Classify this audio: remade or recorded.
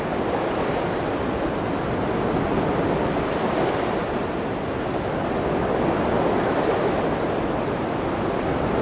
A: recorded